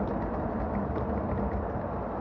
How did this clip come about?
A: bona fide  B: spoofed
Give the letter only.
A